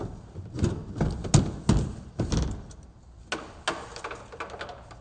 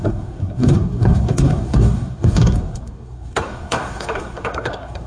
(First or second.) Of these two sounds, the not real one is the second